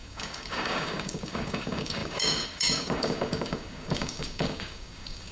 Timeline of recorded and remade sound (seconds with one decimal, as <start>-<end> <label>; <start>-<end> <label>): 0.0-5.3 remade